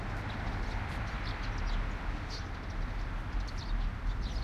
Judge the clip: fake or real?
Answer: real